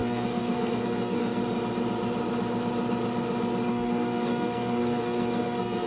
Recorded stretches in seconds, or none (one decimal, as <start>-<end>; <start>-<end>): 1.4-3.7